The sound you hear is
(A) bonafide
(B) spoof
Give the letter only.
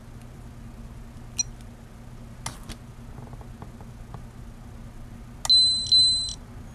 A